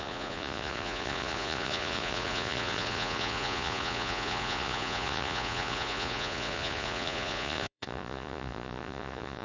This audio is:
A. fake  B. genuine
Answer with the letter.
A